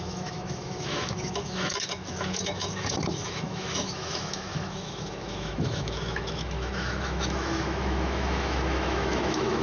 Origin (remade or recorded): remade